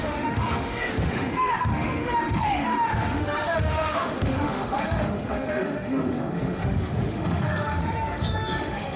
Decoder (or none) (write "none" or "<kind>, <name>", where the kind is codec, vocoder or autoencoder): autoencoder, DAC-VAE